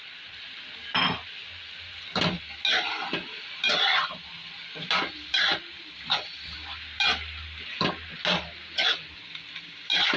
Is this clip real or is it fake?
real